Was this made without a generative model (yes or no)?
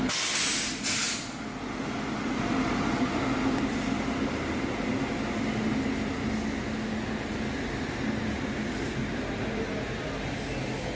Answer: yes